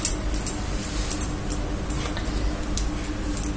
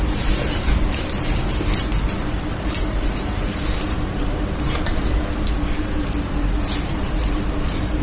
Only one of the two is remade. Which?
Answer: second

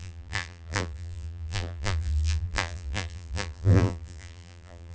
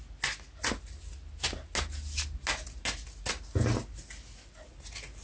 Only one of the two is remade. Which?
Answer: first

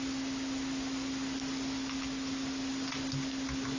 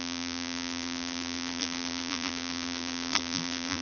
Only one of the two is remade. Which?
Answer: second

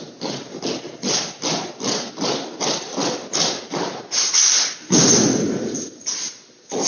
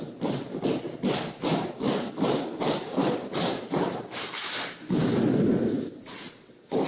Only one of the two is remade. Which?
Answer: second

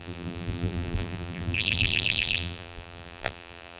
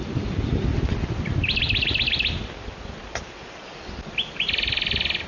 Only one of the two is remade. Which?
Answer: first